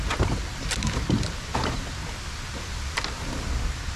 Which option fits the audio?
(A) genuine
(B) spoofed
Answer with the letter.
A